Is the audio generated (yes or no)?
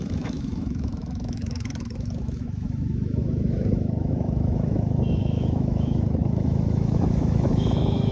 yes